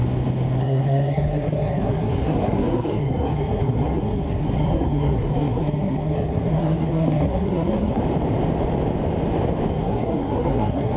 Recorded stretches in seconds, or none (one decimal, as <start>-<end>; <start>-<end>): 0.0-0.6; 8.0-9.7